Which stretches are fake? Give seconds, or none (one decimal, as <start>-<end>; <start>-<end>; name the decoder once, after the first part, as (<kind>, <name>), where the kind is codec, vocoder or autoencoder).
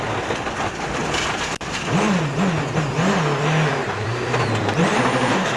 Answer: 0.0-1.0 (vocoder, BigVGAN v2); 3.4-5.6